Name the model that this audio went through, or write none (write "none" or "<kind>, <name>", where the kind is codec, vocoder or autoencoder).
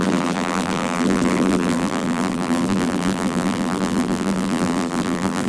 vocoder, BigVGAN v2